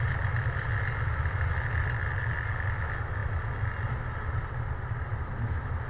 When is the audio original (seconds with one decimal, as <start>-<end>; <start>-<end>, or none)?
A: 0.0-5.9